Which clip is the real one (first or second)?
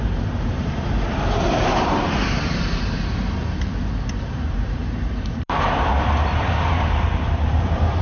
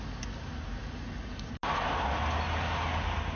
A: second